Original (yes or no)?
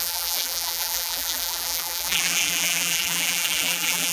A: no